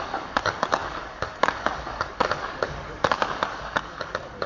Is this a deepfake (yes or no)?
yes